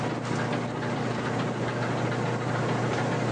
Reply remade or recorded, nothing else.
recorded